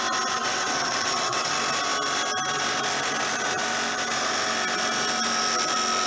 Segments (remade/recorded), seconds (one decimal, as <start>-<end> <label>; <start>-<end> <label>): 0.0-0.4 recorded; 0.4-1.5 remade; 1.5-6.1 recorded